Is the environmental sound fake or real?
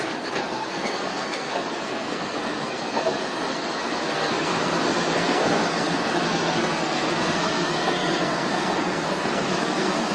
fake